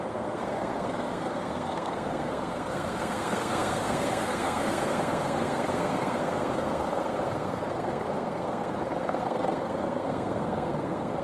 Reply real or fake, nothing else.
fake